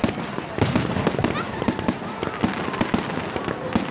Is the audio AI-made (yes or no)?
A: no